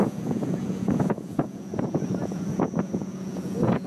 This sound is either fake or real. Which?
fake